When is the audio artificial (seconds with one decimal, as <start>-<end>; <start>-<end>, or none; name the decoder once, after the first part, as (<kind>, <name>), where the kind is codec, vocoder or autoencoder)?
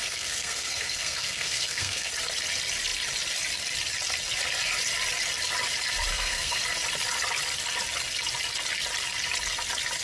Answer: 0.0-2.1 (codec, SNAC); 6.1-6.6